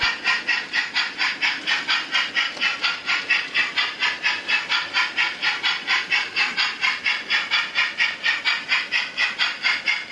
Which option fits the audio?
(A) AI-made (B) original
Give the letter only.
B